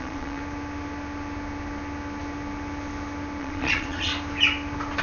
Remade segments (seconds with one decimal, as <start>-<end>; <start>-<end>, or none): 0.0-0.4; 3.4-4.1